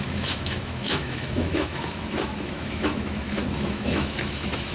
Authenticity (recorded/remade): remade